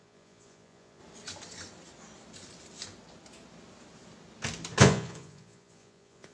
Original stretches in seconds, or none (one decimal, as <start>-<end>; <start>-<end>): 1.0-4.8